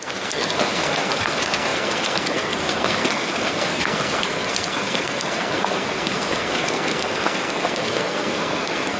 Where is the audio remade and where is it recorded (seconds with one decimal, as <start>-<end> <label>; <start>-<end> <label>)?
0.0-9.0 remade